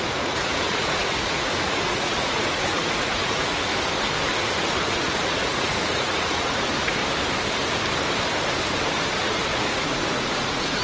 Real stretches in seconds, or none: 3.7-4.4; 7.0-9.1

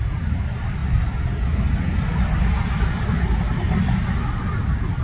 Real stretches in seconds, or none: 0.0-5.0